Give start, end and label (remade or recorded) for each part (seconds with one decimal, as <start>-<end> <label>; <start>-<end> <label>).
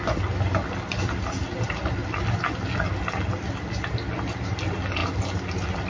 0.0-5.9 recorded